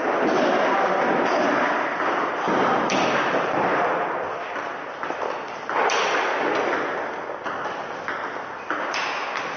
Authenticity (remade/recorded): recorded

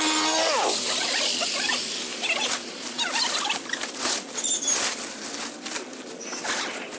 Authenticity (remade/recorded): recorded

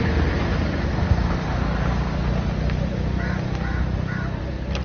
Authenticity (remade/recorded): recorded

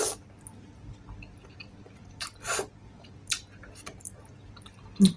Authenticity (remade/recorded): recorded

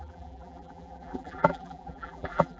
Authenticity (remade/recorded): remade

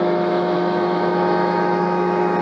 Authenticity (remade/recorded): remade